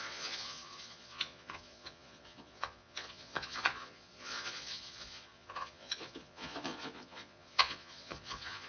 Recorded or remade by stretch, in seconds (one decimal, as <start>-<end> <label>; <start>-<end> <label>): 0.0-8.7 remade

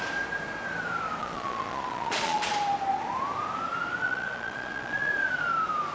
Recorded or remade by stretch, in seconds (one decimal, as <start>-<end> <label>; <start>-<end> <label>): 0.0-1.2 recorded; 1.2-2.4 remade; 2.4-4.0 recorded; 4.0-5.1 remade; 5.1-5.9 recorded